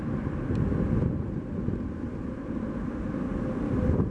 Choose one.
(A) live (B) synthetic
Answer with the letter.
A